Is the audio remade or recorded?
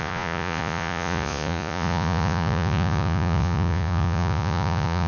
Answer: remade